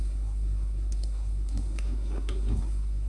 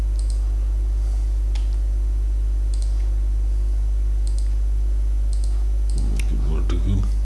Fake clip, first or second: first